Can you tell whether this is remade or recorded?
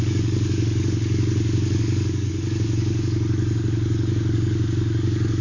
remade